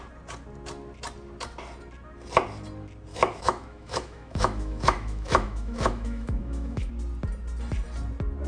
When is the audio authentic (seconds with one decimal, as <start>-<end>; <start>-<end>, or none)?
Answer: 0.0-3.1; 6.9-8.5